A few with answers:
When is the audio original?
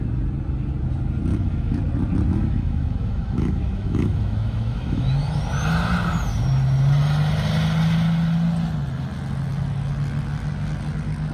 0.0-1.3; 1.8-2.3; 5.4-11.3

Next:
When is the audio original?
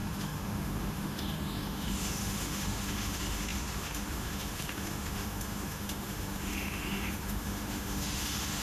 none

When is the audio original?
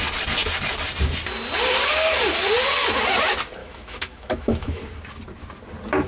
0.0-3.6; 4.8-6.1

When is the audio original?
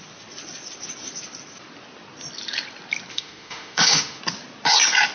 0.0-3.1; 4.2-5.1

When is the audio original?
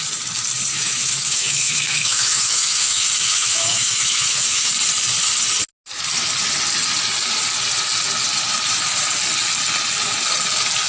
0.0-0.7; 4.7-10.9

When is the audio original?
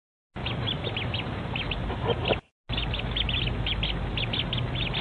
0.0-5.0